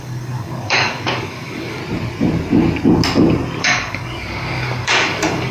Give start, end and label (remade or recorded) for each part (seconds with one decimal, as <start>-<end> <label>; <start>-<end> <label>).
0.0-1.8 remade; 1.8-3.6 recorded; 3.6-5.5 remade